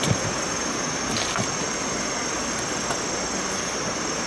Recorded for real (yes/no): yes